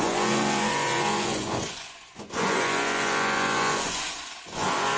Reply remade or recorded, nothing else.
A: remade